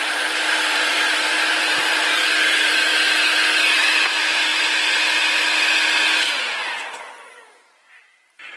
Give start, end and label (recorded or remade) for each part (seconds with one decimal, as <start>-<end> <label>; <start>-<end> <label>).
0.0-2.9 remade; 2.9-3.7 recorded; 3.7-4.5 remade; 4.5-8.0 recorded; 8.0-8.6 remade